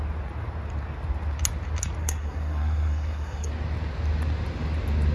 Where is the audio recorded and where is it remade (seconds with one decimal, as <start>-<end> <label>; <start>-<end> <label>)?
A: 0.0-2.0 recorded; 2.0-3.5 remade; 3.5-5.1 recorded